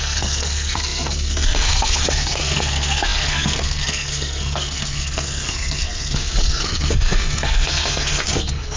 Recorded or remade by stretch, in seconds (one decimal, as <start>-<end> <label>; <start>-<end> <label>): 0.0-8.8 remade